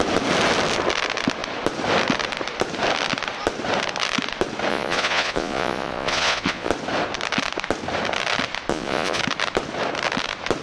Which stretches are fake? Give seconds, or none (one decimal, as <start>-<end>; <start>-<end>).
4.7-6.7; 8.7-9.2